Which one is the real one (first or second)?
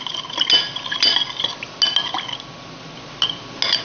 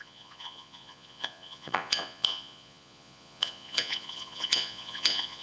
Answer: first